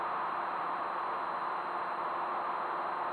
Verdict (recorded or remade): recorded